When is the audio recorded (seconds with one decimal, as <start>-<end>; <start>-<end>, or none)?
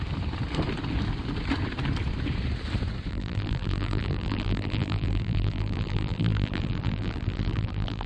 0.0-3.1